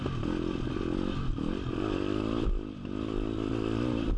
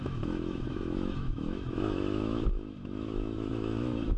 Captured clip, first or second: first